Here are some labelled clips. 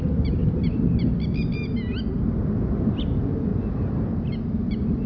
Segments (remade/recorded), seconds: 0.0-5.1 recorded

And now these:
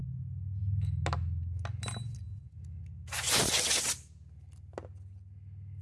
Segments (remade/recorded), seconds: 0.0-5.8 recorded

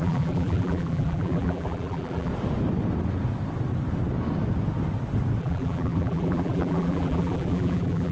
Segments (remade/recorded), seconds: 0.0-2.3 remade; 2.3-5.4 recorded; 5.4-8.1 remade

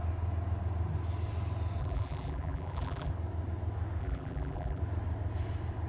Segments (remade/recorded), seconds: 0.0-1.8 recorded; 1.8-3.1 remade; 3.1-4.0 recorded; 4.0-4.8 remade; 4.8-5.9 recorded

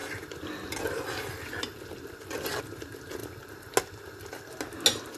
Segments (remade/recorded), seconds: 0.0-5.2 recorded

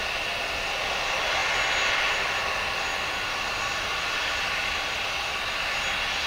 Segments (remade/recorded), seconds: 0.0-6.3 recorded

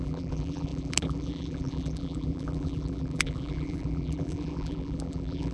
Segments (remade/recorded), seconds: 0.0-5.5 remade